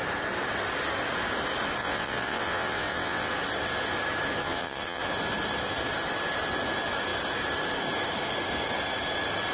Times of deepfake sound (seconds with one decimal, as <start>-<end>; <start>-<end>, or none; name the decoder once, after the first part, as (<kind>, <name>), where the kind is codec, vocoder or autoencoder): 1.8-3.3 (vocoder, WaveNeXt); 4.4-5.0